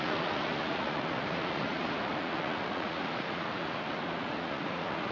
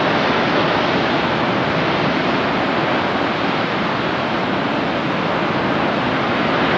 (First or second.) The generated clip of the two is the first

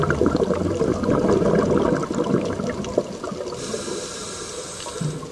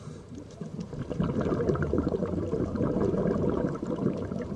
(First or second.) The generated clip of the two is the second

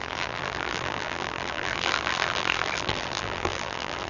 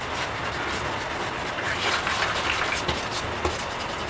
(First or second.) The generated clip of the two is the first